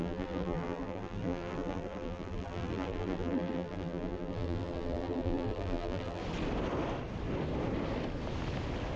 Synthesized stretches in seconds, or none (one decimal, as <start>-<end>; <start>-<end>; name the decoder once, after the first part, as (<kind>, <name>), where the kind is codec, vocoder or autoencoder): 0.0-6.2 (vocoder, BigVGAN v2)